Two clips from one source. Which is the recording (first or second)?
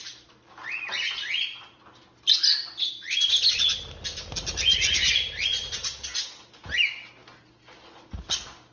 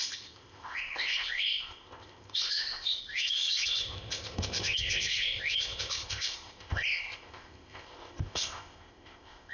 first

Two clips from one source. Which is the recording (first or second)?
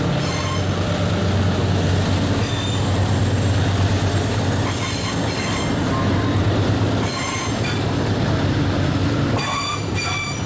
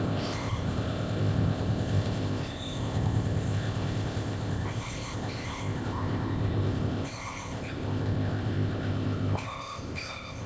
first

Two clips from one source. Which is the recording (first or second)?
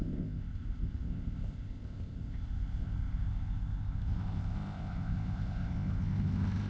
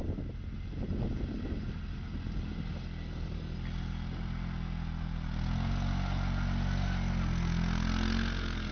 second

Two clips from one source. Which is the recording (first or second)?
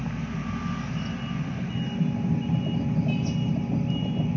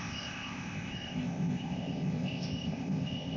first